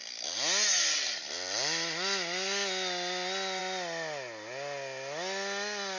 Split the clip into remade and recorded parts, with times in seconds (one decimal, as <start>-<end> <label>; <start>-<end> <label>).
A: 0.0-6.0 recorded